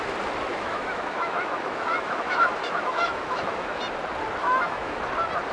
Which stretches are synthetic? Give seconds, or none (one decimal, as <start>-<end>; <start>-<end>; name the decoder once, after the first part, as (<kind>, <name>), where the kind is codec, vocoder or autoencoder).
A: 0.5-3.8 (autoencoder, DAC-VAE); 4.4-5.0